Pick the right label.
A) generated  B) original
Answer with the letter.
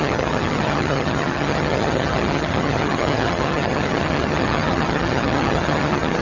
A